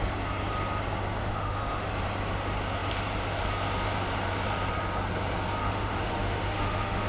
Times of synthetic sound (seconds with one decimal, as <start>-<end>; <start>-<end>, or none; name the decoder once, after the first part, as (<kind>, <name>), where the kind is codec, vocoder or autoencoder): 1.2-1.9 (autoencoder, DAC-VAE); 5.6-7.1